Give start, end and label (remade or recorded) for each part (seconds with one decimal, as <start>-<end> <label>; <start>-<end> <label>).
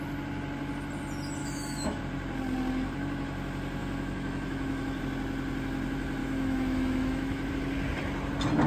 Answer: 0.0-1.4 recorded; 1.4-2.0 remade; 2.0-3.8 recorded; 3.8-5.0 remade; 5.0-6.2 recorded; 6.2-7.5 remade; 7.5-8.7 recorded